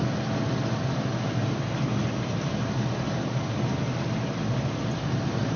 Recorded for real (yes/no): yes